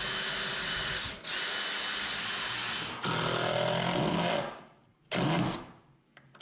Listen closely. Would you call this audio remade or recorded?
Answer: recorded